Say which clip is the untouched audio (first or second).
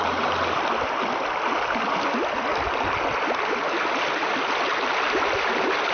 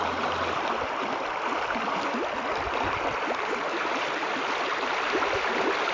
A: first